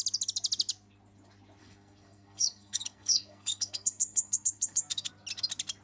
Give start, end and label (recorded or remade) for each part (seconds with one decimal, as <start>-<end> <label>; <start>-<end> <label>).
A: 0.0-1.6 recorded; 1.6-5.1 remade; 5.1-5.8 recorded